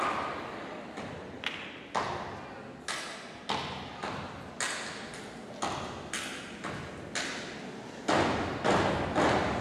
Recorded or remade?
recorded